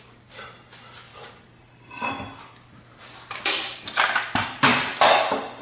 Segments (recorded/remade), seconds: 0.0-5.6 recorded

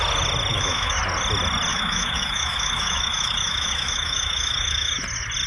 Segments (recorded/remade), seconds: 0.0-0.5 recorded; 0.5-1.0 remade; 1.0-1.7 recorded; 1.7-5.0 remade; 5.0-5.5 recorded

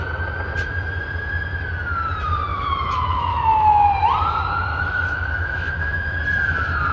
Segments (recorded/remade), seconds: 0.0-2.5 recorded; 2.5-3.9 remade; 3.9-4.7 recorded; 4.7-6.2 remade; 6.2-6.9 recorded

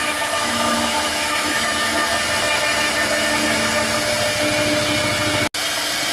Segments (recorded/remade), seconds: 0.0-2.1 remade; 2.1-6.1 recorded

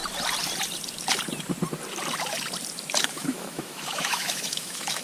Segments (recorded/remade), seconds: 0.0-3.0 recorded; 3.0-5.0 remade